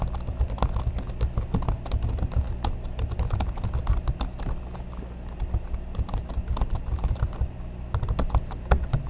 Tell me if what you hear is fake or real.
real